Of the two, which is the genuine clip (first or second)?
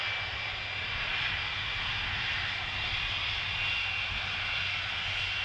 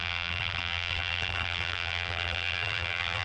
first